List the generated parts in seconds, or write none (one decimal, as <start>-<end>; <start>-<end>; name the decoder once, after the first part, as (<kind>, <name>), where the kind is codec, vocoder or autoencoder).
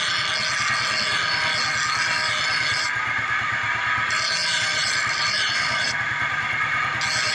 4.7-5.9 (vocoder, BigVGAN v2)